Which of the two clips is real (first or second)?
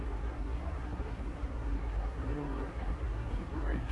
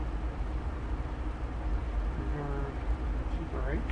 second